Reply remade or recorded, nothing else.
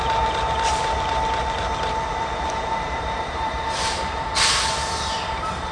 remade